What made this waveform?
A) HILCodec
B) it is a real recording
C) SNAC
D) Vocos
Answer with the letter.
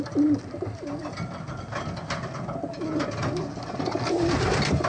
B